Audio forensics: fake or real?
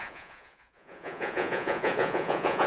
fake